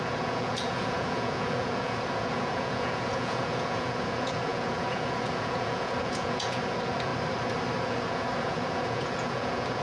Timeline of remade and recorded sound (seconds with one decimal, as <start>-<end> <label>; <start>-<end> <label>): 0.0-7.1 remade; 7.1-7.8 recorded; 7.8-9.8 remade